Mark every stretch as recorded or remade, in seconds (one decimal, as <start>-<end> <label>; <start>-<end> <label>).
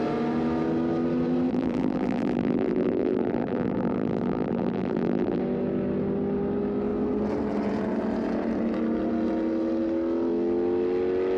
0.0-1.5 recorded; 1.5-5.4 remade; 5.4-11.4 recorded